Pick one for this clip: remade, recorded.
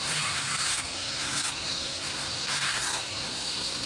remade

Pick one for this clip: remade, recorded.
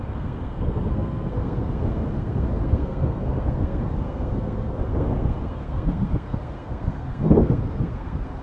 remade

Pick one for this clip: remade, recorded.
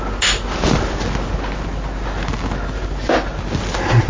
recorded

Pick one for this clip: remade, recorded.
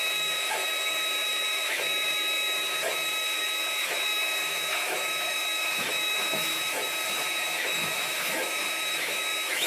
remade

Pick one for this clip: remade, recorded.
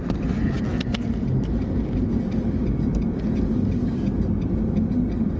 recorded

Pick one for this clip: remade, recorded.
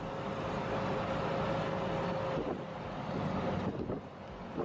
recorded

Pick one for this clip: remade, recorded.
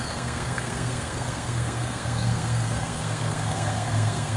remade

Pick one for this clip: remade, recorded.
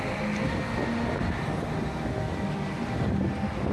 recorded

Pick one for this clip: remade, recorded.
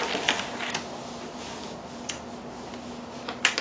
recorded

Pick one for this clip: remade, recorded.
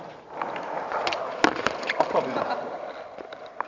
recorded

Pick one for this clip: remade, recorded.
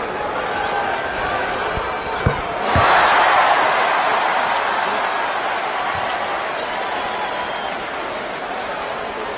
recorded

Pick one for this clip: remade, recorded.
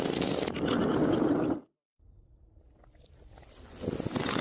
remade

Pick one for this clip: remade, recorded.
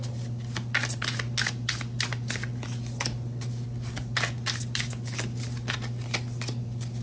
recorded